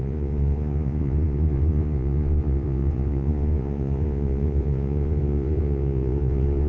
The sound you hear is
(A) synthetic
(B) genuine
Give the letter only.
A